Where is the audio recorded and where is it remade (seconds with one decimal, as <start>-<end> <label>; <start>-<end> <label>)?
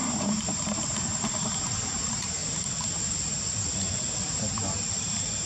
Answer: 0.0-2.4 remade; 2.4-4.3 recorded; 4.3-5.5 remade